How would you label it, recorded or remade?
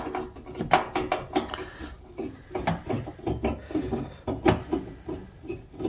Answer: recorded